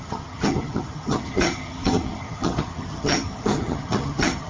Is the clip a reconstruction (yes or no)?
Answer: yes